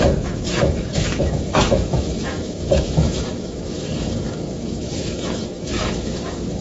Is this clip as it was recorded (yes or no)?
no